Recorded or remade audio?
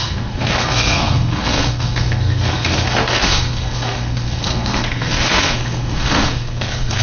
remade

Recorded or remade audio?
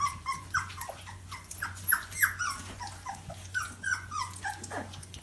remade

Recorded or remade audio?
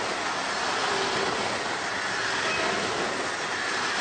recorded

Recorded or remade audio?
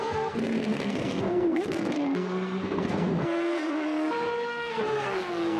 remade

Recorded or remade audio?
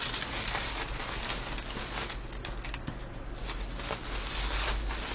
recorded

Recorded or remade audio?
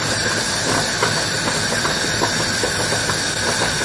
recorded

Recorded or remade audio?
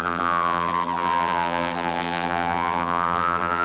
remade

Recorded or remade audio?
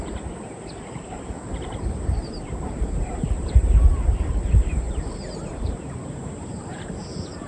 remade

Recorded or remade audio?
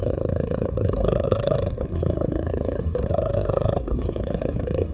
remade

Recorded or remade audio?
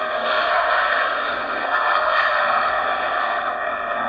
remade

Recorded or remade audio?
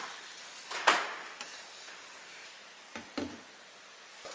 recorded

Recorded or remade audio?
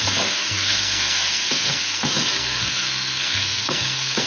remade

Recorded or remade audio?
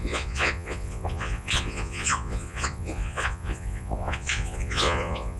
remade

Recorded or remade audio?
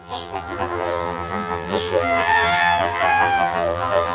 remade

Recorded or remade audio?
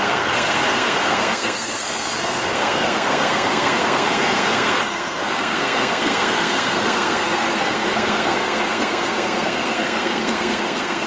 remade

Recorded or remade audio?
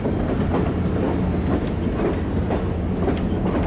recorded